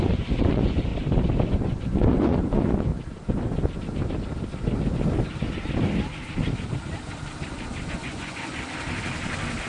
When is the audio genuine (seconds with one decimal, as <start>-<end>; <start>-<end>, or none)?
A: 0.9-1.5; 2.9-7.9; 8.5-9.7